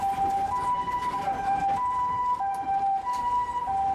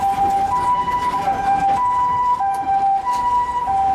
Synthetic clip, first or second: first